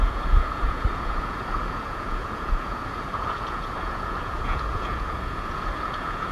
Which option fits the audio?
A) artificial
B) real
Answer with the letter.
A